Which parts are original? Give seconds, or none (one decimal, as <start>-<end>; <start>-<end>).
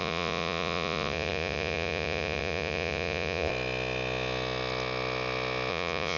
3.5-5.7